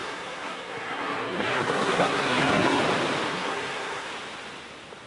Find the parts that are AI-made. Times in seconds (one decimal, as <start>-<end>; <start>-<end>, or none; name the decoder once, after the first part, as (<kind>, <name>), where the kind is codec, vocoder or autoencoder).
0.0-2.8 (codec, SNAC); 3.3-4.1